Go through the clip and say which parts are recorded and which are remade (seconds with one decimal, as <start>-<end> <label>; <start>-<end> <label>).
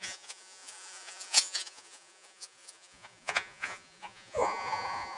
0.0-5.2 remade